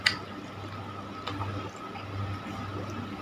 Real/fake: real